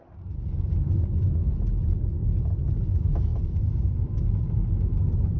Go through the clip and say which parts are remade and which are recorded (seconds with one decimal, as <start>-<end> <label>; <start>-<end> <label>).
0.0-5.4 recorded